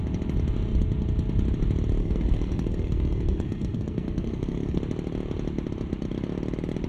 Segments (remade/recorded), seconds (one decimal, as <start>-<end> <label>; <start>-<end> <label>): 0.0-2.0 recorded; 2.0-4.8 remade; 4.8-6.9 recorded